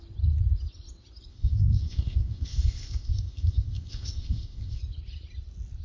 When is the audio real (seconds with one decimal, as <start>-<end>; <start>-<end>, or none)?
0.0-1.3; 4.8-5.8